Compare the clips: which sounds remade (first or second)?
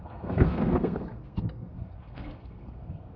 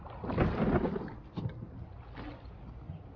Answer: first